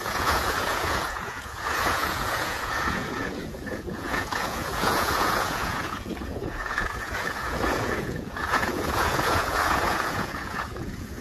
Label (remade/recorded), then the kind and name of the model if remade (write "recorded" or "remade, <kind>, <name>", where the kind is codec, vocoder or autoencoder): remade, vocoder, Vocos